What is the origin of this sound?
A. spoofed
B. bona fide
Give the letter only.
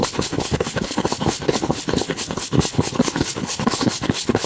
A